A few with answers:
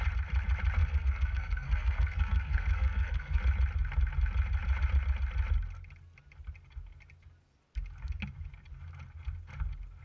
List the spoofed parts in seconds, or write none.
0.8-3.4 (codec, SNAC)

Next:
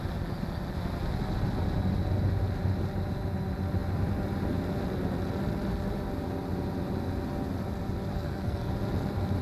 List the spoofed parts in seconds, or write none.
8.1-8.7 (codec, SNAC)

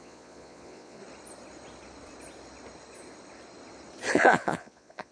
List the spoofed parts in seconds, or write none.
0.0-1.0 (vocoder, Vocos); 4.1-5.1

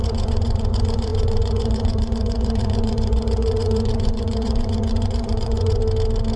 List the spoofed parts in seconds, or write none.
0.0-5.8 (vocoder, Vocos)

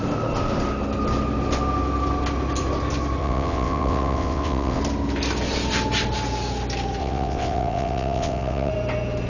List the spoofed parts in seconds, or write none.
3.2-4.8 (vocoder, WaveNeXt); 7.0-8.7